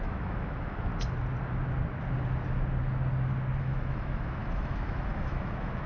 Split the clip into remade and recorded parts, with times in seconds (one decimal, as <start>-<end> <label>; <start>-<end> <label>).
0.0-0.9 remade; 0.9-3.6 recorded; 3.6-5.9 remade

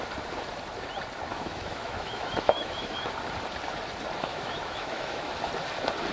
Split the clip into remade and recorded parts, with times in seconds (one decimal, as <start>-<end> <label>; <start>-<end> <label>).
0.0-1.3 recorded; 1.3-3.1 remade; 3.1-4.3 recorded; 4.3-5.4 remade; 5.4-6.1 recorded